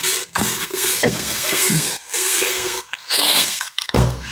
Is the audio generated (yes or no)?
yes